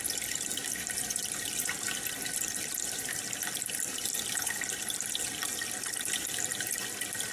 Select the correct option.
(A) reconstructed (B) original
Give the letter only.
B